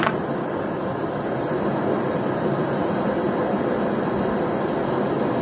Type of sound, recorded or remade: recorded